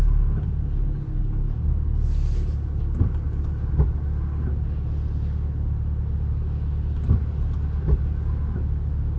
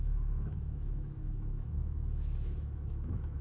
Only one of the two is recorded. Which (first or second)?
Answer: first